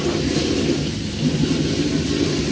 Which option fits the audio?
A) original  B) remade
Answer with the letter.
A